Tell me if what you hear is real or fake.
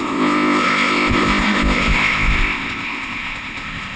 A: fake